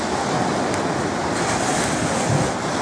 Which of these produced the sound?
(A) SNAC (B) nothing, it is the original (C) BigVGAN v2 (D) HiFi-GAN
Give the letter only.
B